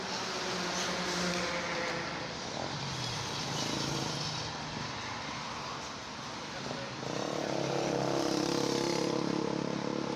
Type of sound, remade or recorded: recorded